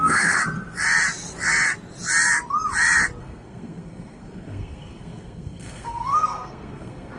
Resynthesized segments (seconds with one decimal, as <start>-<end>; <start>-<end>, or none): 0.0-0.4; 3.2-7.2